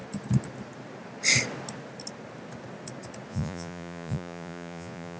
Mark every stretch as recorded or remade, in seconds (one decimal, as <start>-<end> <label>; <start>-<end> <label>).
0.0-3.3 recorded; 3.3-5.2 remade